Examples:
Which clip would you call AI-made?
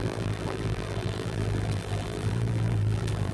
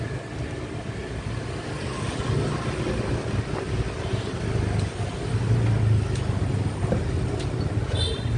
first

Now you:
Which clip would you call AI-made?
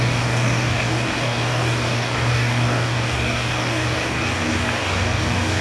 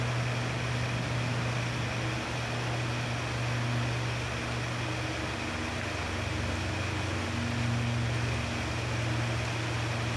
first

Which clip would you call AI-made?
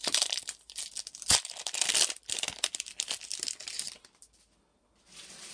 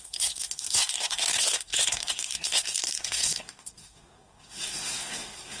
second